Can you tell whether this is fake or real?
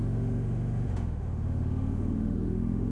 fake